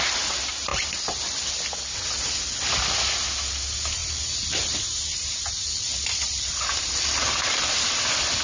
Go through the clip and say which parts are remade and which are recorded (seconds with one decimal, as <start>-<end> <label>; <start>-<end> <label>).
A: 0.0-4.0 recorded; 4.0-6.9 remade; 6.9-8.4 recorded